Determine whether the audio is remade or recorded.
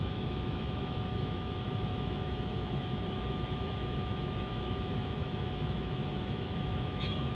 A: remade